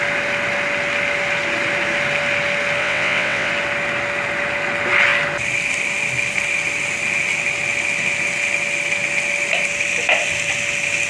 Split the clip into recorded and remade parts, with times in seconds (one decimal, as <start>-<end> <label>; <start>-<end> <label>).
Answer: 0.0-2.8 recorded; 2.8-3.5 remade; 3.5-11.1 recorded